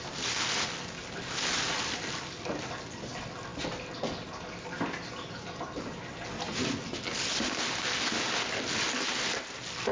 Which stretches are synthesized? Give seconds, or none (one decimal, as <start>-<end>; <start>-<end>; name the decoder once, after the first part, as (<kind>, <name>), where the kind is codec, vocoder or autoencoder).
none